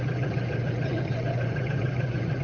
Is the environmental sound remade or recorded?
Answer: remade